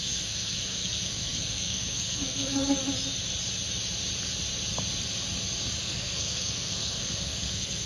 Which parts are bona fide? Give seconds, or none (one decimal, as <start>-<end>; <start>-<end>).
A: 2.8-5.8

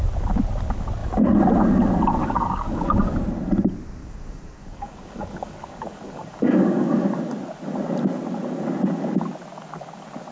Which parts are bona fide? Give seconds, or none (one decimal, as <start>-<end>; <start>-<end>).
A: 0.0-2.2; 3.1-4.0; 7.1-10.3

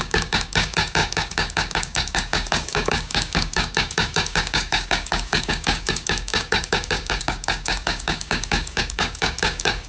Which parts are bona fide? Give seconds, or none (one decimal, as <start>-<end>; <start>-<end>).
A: none

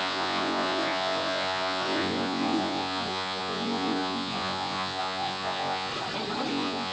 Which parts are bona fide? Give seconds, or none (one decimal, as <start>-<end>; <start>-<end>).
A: 5.9-6.5